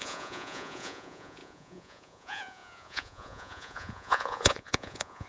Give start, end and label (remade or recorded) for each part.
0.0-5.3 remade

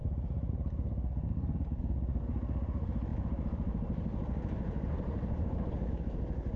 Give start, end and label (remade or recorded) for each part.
0.0-0.5 remade; 0.5-3.1 recorded; 3.1-5.9 remade; 5.9-6.6 recorded

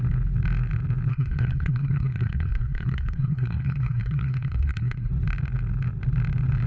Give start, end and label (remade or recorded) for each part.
0.0-1.1 recorded; 1.1-5.1 remade; 5.1-6.7 recorded

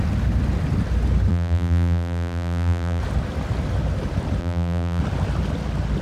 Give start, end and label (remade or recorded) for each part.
0.0-1.3 recorded; 1.3-3.0 remade; 3.0-4.4 recorded; 4.4-5.0 remade; 5.0-6.0 recorded

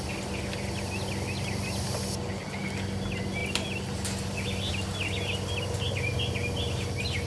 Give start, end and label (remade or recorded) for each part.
0.0-7.3 recorded

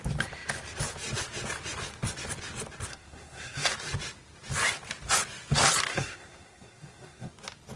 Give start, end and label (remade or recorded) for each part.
0.0-2.9 recorded; 2.9-3.7 remade; 3.7-5.9 recorded; 5.9-7.3 remade; 7.3-7.8 recorded

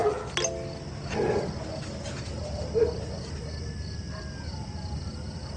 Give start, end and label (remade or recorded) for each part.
0.0-5.6 recorded

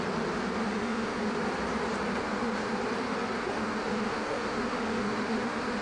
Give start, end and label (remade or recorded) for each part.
0.0-0.6 recorded; 0.6-1.3 remade; 1.3-2.2 recorded; 2.2-2.8 remade; 2.8-3.4 recorded; 3.4-5.8 remade